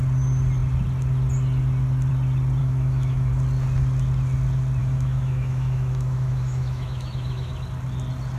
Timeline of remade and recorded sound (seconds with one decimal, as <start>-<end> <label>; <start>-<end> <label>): 0.0-2.6 recorded; 2.6-3.3 remade; 3.3-4.8 recorded; 4.8-7.5 remade; 7.5-8.4 recorded